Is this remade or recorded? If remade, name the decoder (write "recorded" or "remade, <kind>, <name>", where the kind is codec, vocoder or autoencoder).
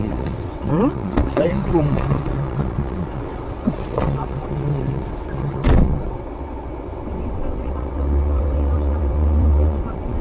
remade, vocoder, WaveNeXt